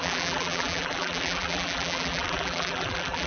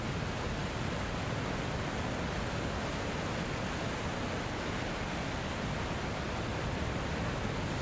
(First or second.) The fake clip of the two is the first